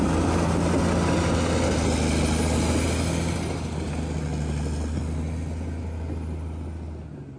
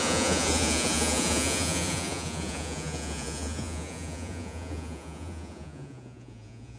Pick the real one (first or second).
first